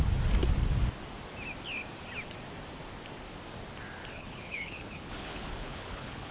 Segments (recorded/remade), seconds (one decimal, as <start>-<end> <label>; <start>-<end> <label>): 0.0-4.0 recorded; 4.0-6.3 remade